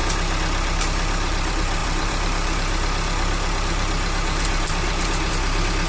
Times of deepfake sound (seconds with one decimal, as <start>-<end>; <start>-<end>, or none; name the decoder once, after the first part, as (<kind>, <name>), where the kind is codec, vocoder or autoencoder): 0.8-5.9 (vocoder, BigVGAN v2)